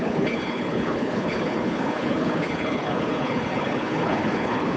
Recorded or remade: remade